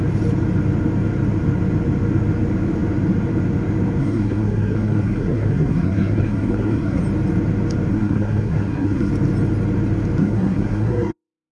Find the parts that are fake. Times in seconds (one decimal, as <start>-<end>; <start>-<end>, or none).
4.0-7.0; 7.9-9.1; 10.2-11.5